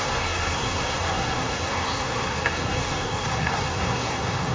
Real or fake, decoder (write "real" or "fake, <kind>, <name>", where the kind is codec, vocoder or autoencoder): fake, codec, SNAC